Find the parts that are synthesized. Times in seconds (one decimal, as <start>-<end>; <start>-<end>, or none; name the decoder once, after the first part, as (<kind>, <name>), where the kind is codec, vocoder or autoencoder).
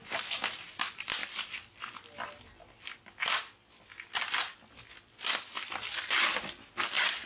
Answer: 0.0-7.3 (vocoder, BigVGAN v2)